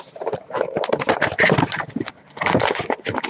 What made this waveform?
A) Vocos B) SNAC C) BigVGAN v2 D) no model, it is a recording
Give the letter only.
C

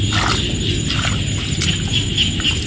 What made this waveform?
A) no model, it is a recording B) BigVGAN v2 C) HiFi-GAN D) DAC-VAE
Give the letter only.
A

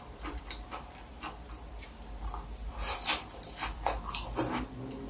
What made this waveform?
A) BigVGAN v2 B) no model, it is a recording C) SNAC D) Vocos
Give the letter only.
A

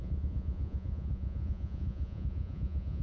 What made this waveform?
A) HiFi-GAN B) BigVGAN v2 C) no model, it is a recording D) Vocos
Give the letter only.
D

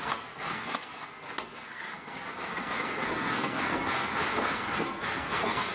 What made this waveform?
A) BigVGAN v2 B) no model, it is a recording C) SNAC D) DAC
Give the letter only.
C